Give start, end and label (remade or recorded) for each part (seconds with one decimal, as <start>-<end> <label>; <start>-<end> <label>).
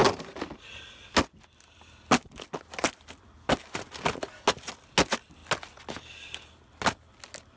0.0-7.6 recorded